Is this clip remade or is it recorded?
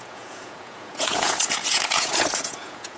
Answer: remade